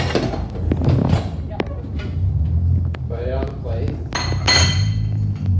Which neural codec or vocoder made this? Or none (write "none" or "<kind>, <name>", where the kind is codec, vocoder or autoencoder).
none